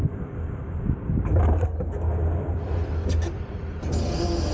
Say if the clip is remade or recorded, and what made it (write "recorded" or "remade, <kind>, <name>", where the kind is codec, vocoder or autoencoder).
recorded